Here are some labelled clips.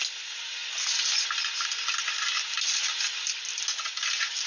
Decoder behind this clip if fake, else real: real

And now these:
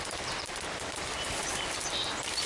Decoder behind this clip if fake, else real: real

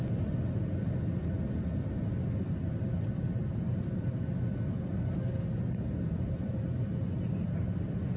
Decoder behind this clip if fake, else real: real